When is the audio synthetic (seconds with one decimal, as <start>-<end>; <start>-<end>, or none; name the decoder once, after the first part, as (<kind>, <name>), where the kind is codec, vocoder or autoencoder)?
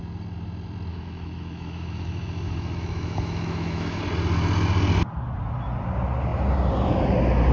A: 0.9-4.0 (autoencoder, DAC-VAE)